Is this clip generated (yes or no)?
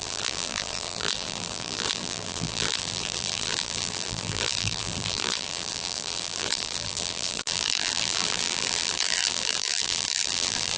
yes